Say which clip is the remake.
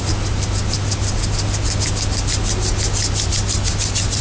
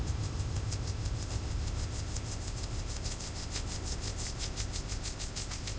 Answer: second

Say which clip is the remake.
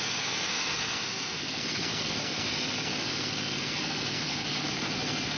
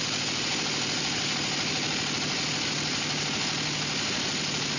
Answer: first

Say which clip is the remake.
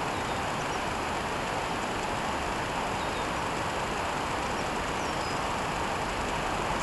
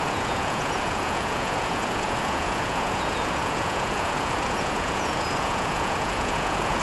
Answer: second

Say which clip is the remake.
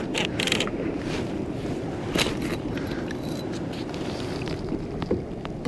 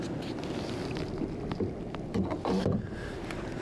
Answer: first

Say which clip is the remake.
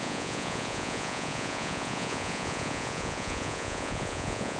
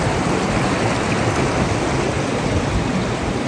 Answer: first